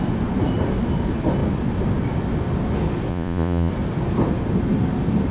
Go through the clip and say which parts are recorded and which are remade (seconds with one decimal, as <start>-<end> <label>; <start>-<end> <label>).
0.0-3.1 recorded; 3.1-3.7 remade; 3.7-5.3 recorded